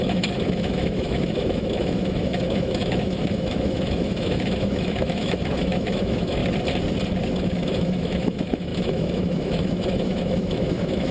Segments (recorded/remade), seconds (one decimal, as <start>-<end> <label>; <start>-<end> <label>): 0.0-6.4 remade; 6.4-7.4 recorded; 7.4-11.1 remade

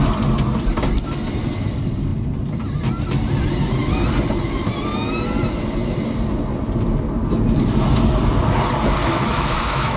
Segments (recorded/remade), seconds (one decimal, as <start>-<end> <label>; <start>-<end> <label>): 0.0-9.0 recorded; 9.0-10.0 remade

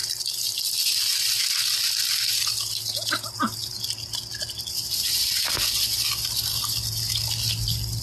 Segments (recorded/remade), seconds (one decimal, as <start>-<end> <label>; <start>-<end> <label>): 0.0-8.0 recorded

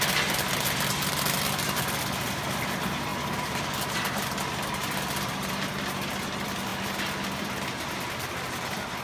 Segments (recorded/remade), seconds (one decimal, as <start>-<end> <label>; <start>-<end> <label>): 0.0-9.0 recorded

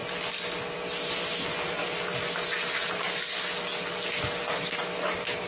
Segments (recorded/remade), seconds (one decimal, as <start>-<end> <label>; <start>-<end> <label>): 0.0-5.5 recorded

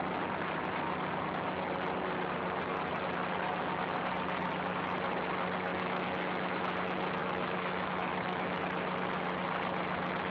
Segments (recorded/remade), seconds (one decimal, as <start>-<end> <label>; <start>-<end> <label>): 0.0-5.7 recorded; 5.7-6.6 remade; 6.6-7.2 recorded; 7.2-8.6 remade; 8.6-10.3 recorded